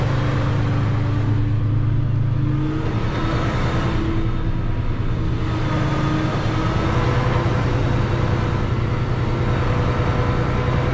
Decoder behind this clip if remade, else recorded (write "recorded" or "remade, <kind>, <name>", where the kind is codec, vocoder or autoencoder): recorded